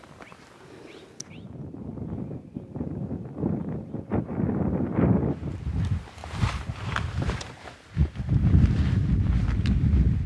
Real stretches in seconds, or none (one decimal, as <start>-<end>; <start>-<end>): 0.0-6.2; 7.8-10.3